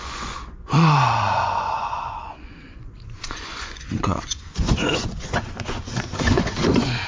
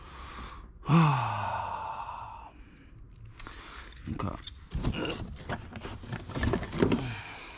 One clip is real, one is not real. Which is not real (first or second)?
first